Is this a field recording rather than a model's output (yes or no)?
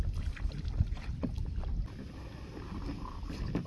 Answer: yes